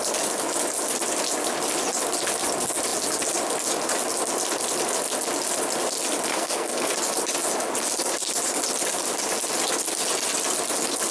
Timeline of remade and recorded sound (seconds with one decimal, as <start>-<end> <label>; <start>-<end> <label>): 0.0-6.3 recorded; 6.3-6.9 remade; 6.9-11.1 recorded